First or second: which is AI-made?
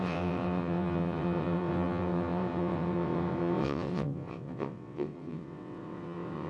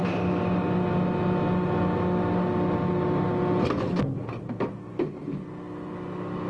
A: first